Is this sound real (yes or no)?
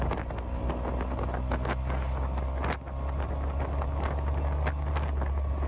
yes